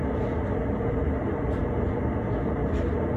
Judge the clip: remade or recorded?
recorded